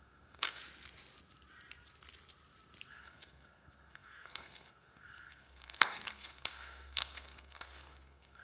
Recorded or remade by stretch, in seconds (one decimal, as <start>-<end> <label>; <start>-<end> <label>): 0.0-0.6 remade; 0.6-2.9 recorded; 2.9-8.4 remade